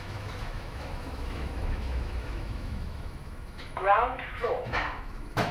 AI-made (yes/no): yes